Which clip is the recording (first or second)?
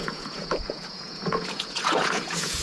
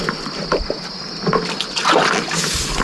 second